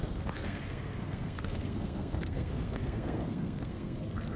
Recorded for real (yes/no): no